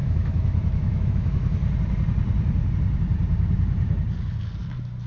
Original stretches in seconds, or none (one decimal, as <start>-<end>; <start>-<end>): 1.6-5.1